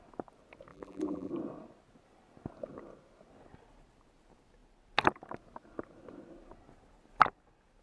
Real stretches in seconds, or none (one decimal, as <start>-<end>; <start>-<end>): 0.0-0.7; 1.3-7.8